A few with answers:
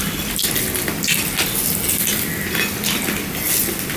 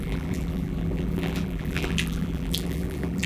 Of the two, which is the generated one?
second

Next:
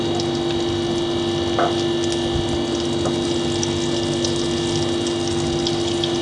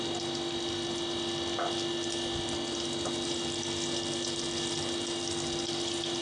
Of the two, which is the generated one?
second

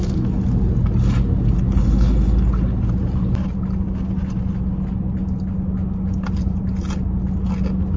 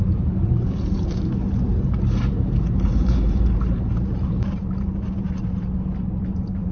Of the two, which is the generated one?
second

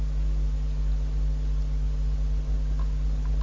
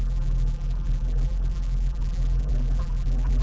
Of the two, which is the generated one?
second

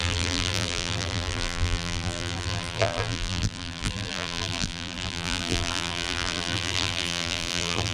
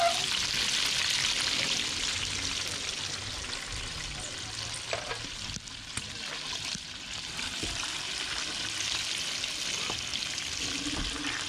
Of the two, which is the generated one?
first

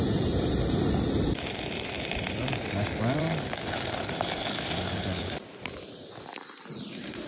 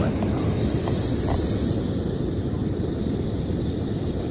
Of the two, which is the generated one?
first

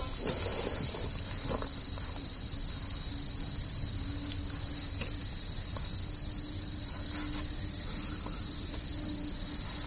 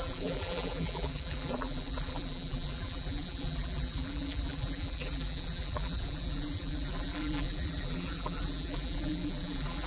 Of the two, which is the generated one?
second